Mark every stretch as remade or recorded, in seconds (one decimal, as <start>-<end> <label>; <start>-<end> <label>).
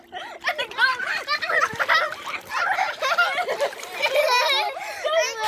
0.0-5.5 recorded